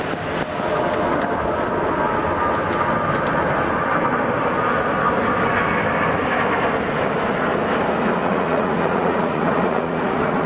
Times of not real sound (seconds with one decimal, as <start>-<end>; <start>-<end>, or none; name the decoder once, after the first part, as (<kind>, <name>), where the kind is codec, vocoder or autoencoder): 8.2-10.5 (vocoder, Vocos)